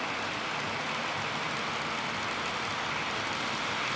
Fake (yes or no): no